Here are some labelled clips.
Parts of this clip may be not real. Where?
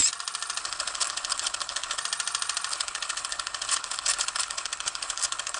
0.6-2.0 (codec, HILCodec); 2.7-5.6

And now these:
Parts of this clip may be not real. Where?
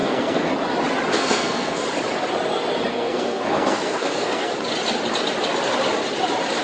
0.0-0.5 (codec, SNAC); 1.1-1.8; 2.9-4.5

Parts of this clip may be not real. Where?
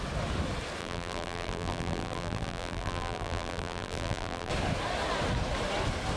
0.8-4.5 (vocoder, BigVGAN v2)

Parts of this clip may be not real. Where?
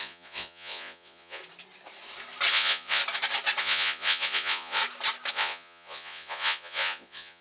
0.0-1.4 (vocoder, Vocos); 2.5-3.0; 3.6-4.8; 5.3-7.4